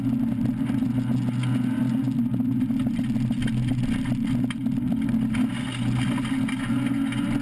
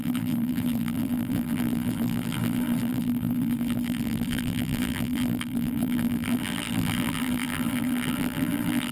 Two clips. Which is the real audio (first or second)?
first